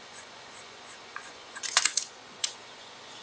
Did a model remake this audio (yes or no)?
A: yes